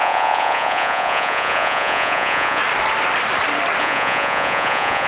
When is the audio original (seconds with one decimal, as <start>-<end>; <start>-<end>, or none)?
2.6-3.8